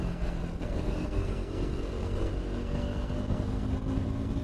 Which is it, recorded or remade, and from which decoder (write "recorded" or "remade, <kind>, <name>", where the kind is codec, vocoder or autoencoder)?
remade, codec, SNAC